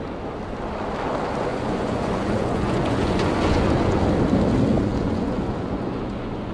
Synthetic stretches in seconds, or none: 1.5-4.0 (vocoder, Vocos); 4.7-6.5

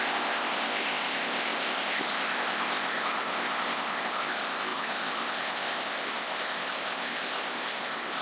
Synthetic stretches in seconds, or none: 0.0-8.2 (codec, ZipCodec)

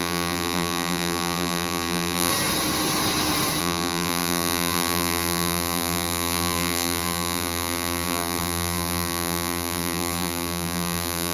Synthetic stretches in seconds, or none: 0.0-2.3 (vocoder, BigVGAN v2); 3.6-11.3

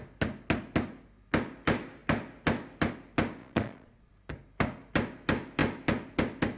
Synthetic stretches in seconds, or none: 3.4-4.1 (vocoder, Vocos)